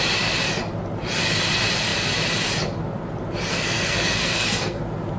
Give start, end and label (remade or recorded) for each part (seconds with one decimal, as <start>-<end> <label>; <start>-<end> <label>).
0.0-3.5 recorded; 3.5-4.8 remade; 4.8-5.2 recorded